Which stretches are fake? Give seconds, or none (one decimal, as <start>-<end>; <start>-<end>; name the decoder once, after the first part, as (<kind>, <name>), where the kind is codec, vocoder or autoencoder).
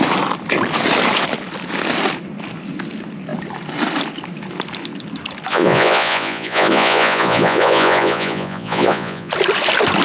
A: 5.5-9.3 (vocoder, Vocos)